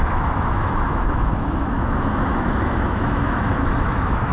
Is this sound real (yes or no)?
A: no